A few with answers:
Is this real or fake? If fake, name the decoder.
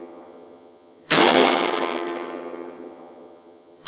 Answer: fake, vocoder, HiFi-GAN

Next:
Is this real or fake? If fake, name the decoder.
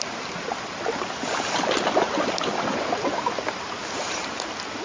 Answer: real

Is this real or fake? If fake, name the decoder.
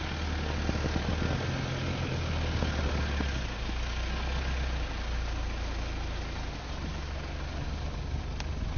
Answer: real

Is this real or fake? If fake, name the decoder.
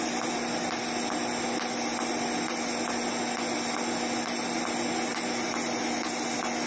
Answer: real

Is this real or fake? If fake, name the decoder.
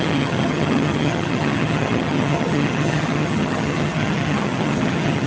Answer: fake, vocoder, HiFi-GAN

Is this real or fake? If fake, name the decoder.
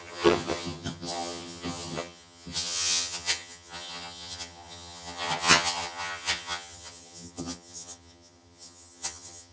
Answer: fake, vocoder, HiFi-GAN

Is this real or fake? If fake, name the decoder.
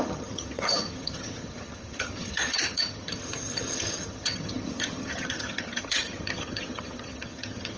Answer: fake, vocoder, HiFi-GAN